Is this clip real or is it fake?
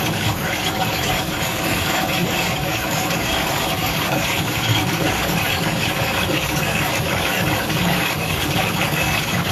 fake